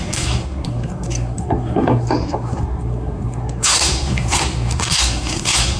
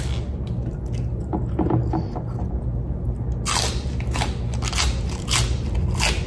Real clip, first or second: second